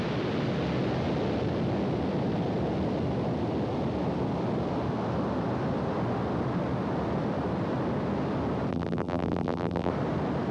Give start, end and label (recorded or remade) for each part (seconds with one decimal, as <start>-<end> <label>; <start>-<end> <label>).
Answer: 0.0-8.7 recorded; 8.7-9.9 remade; 9.9-10.5 recorded